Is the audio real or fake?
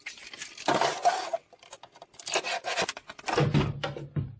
real